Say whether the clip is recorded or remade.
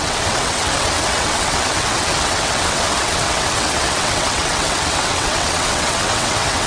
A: remade